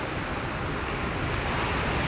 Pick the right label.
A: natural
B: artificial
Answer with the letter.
A